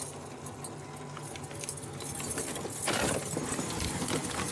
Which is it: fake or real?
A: real